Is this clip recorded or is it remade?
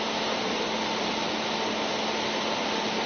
recorded